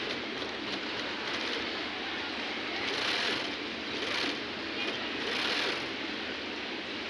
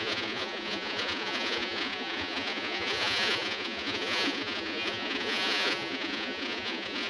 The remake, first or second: second